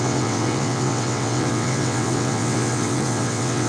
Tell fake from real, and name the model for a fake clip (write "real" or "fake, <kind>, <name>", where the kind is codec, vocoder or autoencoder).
fake, vocoder, WaveNeXt